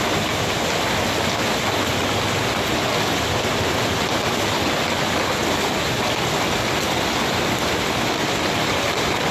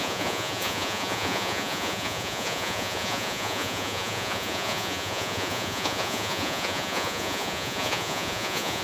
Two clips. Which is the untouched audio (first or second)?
first